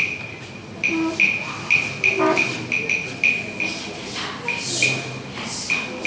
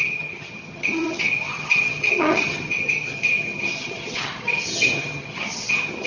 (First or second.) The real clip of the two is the first